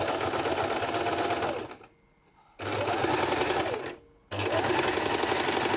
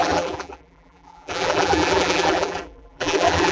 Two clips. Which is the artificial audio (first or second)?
second